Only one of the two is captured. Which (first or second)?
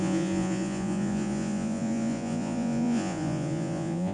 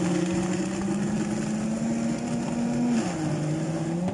second